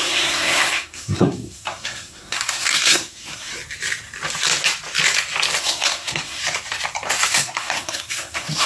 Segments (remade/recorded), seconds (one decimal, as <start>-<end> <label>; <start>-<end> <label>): 0.0-3.5 remade; 3.5-5.6 recorded; 5.6-6.4 remade; 6.4-7.3 recorded; 7.3-8.7 remade